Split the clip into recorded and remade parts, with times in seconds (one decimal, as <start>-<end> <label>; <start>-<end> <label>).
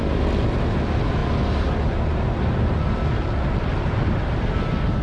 0.0-5.0 recorded